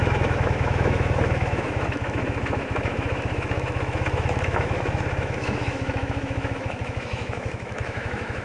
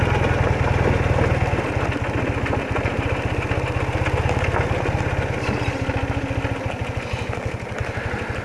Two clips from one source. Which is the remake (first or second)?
first